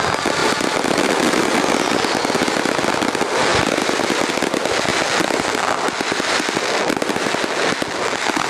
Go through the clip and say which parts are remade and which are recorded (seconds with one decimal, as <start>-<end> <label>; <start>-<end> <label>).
0.0-8.5 recorded